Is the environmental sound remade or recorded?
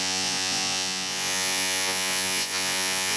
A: remade